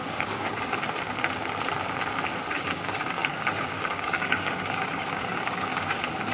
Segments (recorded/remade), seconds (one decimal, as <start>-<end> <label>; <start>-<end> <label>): 0.0-0.8 remade; 0.8-2.5 recorded; 2.5-6.3 remade